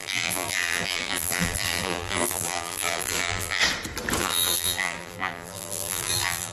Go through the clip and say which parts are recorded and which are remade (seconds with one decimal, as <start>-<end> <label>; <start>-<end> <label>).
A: 0.0-3.6 remade; 3.6-4.2 recorded; 4.2-6.5 remade